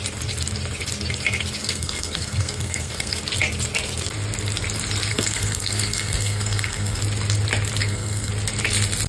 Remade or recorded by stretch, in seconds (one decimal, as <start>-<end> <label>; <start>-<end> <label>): 0.0-1.6 recorded; 1.6-3.2 remade; 3.2-5.1 recorded; 5.1-7.0 remade; 7.0-7.8 recorded; 7.8-8.3 remade; 8.3-9.1 recorded

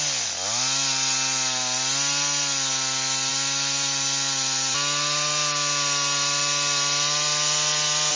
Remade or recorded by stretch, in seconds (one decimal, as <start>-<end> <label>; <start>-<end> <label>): 0.0-8.2 recorded